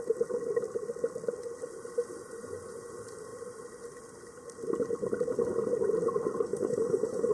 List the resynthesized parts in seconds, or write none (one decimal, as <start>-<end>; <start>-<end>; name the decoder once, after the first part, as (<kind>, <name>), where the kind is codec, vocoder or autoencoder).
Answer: 2.2-2.9 (vocoder, Vocos); 6.5-7.3